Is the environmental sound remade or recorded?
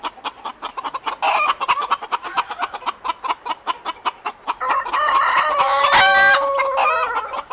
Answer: recorded